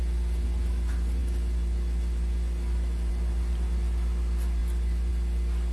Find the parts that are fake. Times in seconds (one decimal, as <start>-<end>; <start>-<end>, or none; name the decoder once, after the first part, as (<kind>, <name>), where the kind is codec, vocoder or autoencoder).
none